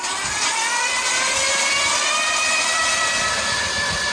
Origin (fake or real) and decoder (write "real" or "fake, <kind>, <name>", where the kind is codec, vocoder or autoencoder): real